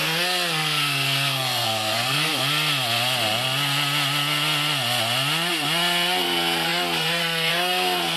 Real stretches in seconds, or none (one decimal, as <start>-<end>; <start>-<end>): 2.3-6.2